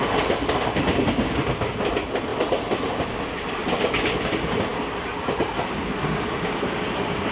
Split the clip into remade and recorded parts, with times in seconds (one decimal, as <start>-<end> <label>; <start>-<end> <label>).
0.0-7.3 recorded